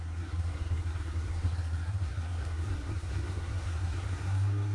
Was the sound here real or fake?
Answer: fake